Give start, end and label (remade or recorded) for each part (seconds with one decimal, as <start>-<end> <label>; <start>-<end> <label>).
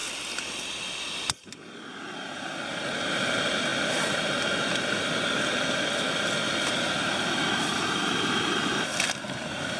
0.0-0.5 remade; 0.5-9.8 recorded